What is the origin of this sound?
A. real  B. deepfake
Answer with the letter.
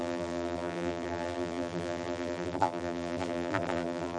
B